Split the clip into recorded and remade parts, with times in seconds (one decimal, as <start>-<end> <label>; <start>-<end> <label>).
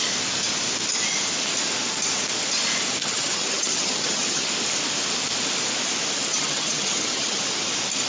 0.0-3.0 recorded; 3.0-4.5 remade; 4.5-6.3 recorded; 6.3-7.4 remade; 7.4-8.1 recorded